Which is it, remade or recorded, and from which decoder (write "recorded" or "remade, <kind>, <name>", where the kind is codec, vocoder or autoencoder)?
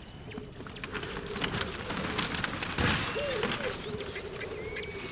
recorded